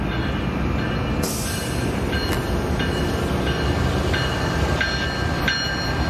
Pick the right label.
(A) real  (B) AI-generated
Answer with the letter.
A